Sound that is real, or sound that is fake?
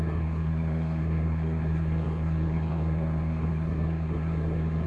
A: fake